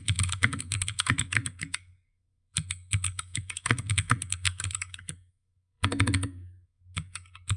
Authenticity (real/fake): fake